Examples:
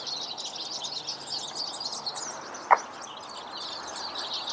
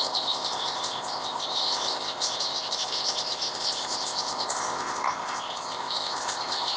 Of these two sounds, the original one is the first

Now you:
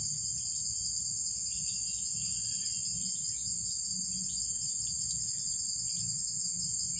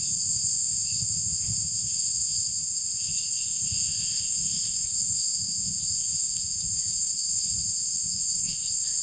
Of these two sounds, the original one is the first